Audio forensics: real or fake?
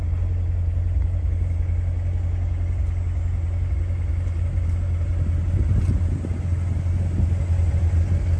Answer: real